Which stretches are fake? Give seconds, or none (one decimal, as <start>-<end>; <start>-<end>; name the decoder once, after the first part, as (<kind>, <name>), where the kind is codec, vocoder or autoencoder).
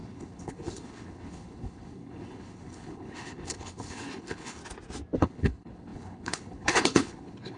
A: 0.0-4.6 (codec, HILCodec); 5.2-7.6